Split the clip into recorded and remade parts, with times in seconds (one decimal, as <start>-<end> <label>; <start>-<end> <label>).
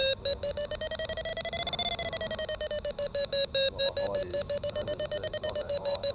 0.0-4.3 recorded; 4.3-6.1 remade